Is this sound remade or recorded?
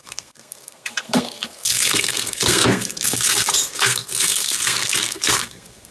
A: remade